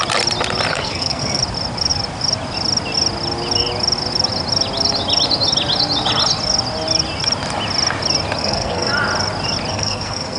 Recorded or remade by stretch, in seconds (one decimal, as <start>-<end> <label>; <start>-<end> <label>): 0.0-0.7 recorded; 0.7-1.4 remade; 1.4-8.4 recorded; 8.4-8.9 remade; 8.9-9.7 recorded; 9.7-10.4 remade

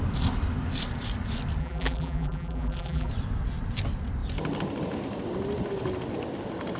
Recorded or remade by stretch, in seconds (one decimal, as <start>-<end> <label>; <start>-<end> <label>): 0.0-1.6 recorded; 1.6-3.1 remade; 3.1-6.8 recorded

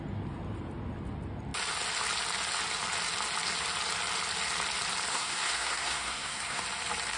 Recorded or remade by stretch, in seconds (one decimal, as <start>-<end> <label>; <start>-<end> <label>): 0.0-5.1 recorded; 5.1-6.6 remade; 6.6-7.2 recorded